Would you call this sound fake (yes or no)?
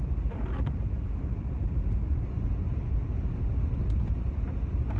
no